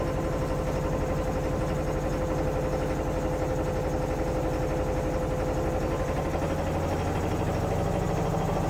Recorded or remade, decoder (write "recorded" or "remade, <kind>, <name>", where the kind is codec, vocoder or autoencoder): recorded